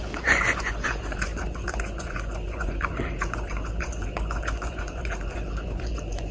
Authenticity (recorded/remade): remade